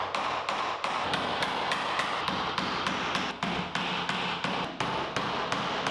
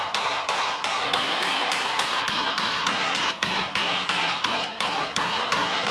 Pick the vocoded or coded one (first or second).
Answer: second